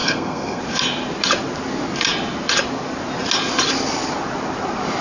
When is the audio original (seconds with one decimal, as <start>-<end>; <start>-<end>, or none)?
0.6-5.0